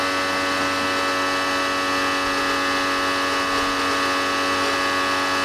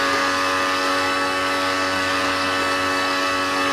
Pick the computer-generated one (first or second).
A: second